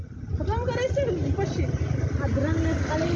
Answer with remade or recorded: recorded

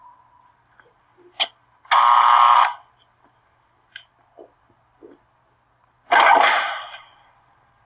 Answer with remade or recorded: recorded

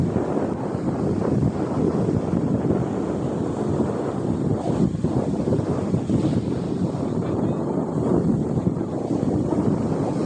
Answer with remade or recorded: recorded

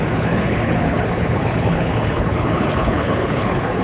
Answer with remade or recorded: remade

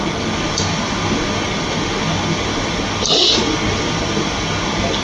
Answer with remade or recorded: recorded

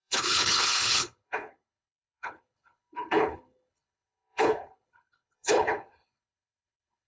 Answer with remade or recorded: remade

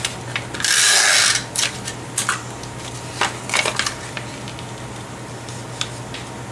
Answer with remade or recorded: recorded